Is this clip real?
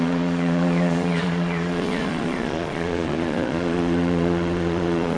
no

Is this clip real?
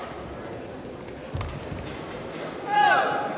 yes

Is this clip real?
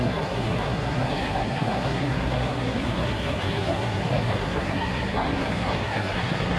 no